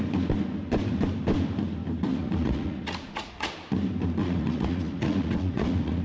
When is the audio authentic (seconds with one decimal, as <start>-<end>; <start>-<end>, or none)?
0.0-2.1; 3.5-4.2